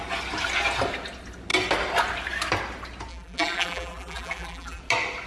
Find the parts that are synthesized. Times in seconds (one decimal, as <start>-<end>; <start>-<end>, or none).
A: 3.1-4.8